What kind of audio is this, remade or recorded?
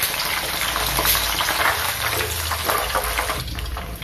remade